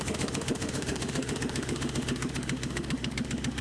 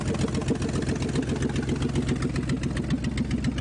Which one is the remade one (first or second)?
first